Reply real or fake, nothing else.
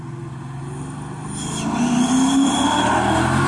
real